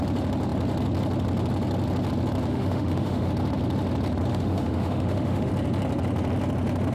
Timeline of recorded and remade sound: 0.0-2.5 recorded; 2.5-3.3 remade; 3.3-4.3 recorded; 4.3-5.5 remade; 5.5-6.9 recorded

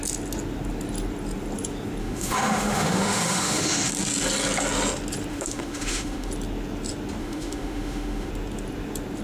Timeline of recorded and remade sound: 0.0-2.0 recorded; 2.0-3.9 remade; 3.9-5.3 recorded; 5.3-6.3 remade; 6.3-7.2 recorded; 7.2-8.3 remade; 8.3-9.2 recorded

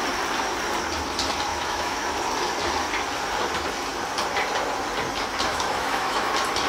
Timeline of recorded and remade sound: 0.0-1.5 recorded; 1.5-2.1 remade; 2.1-5.5 recorded; 5.5-6.3 remade; 6.3-6.7 recorded

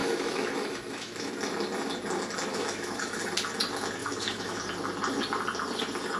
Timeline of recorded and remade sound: 0.0-1.3 remade; 1.3-2.5 recorded; 2.5-3.2 remade; 3.2-4.0 recorded; 4.0-4.6 remade; 4.6-6.2 recorded

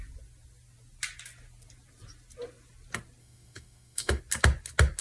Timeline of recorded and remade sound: 0.0-3.2 recorded; 3.2-4.2 remade; 4.2-5.0 recorded